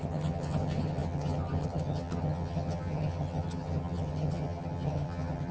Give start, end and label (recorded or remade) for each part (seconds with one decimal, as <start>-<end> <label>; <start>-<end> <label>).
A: 0.0-5.5 remade